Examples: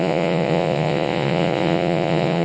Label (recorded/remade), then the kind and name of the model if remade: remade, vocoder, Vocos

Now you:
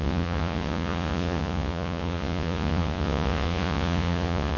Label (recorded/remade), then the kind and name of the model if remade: remade, vocoder, Vocos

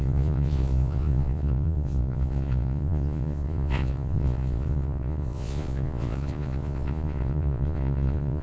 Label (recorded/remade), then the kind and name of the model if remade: remade, vocoder, Vocos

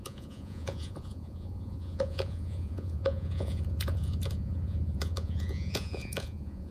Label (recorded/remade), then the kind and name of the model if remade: remade, vocoder, Vocos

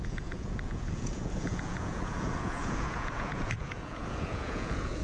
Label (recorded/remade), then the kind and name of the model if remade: remade, vocoder, Vocos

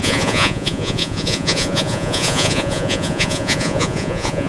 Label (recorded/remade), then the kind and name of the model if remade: remade, vocoder, Vocos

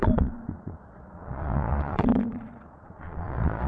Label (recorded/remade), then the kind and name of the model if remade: remade, vocoder, Vocos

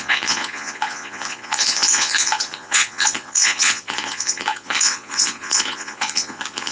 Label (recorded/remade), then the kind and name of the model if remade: remade, vocoder, Vocos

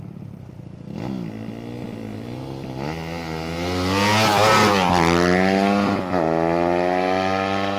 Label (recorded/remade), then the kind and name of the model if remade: recorded